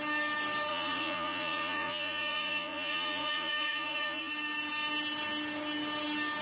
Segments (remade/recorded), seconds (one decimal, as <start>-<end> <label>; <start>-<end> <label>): 0.0-0.7 recorded; 0.7-4.3 remade; 4.3-6.4 recorded

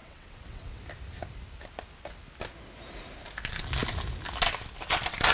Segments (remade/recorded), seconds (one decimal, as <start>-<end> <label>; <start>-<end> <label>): 0.0-0.8 remade; 0.8-5.3 recorded

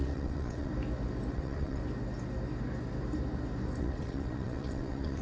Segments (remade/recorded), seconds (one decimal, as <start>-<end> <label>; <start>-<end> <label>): 0.0-0.7 remade; 0.7-1.3 recorded; 1.3-1.8 remade; 1.8-3.8 recorded; 3.8-5.2 remade

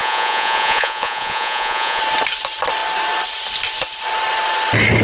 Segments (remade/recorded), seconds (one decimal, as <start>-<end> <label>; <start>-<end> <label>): 0.0-2.0 remade; 2.0-5.0 recorded

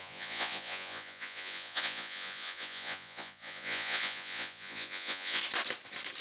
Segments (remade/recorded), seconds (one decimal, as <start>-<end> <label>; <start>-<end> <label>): 0.0-5.4 remade; 5.4-6.2 recorded

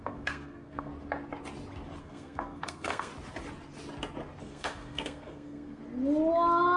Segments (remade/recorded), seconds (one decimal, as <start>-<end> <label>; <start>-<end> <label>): 0.0-0.9 remade; 0.9-2.0 recorded; 2.0-3.1 remade; 3.1-4.4 recorded; 4.4-5.8 remade; 5.8-6.8 recorded

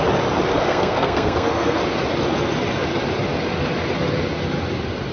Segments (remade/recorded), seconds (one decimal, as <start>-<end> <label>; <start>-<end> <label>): 0.0-0.5 recorded; 0.5-1.8 remade; 1.8-5.1 recorded